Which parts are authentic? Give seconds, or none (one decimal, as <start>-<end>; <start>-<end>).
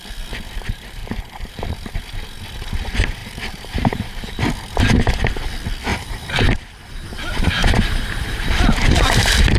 0.0-1.0; 2.0-3.2; 4.4-5.9; 8.6-9.6